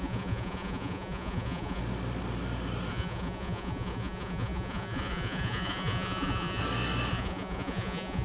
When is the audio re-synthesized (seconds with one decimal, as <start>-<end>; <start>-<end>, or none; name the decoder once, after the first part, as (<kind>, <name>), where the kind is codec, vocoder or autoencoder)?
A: 0.0-1.8 (vocoder, Vocos); 2.9-6.6; 7.1-8.2